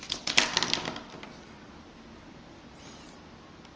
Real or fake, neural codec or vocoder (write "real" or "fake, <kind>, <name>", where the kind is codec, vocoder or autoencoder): real